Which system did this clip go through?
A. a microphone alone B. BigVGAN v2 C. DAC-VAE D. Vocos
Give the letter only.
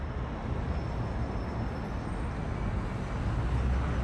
A